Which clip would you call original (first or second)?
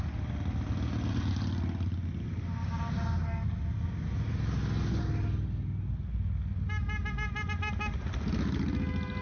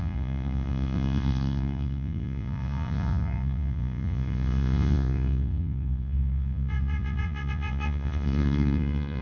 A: first